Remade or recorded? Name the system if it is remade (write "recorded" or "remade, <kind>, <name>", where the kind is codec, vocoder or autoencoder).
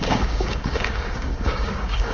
remade, codec, DAC